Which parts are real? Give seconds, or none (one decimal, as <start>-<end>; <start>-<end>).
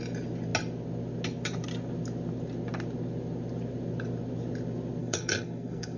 0.0-5.0